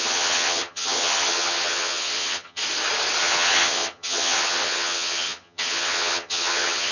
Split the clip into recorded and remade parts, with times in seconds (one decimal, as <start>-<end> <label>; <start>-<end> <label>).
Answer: 0.0-2.6 remade; 2.6-3.2 recorded; 3.2-6.9 remade